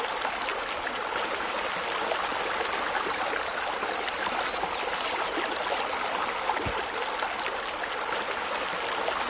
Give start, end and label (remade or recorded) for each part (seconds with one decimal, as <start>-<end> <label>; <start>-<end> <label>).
0.0-9.3 recorded